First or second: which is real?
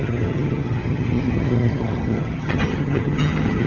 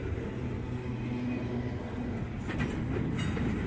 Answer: second